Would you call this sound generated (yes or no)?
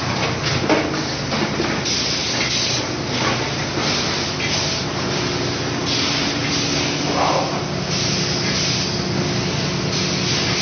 no